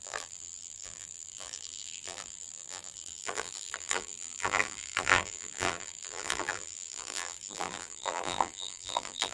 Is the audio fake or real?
fake